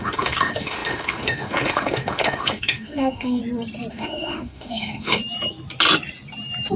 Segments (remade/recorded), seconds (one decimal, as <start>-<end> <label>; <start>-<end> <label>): 0.0-3.4 remade; 3.4-3.9 recorded; 3.9-5.2 remade; 5.2-6.8 recorded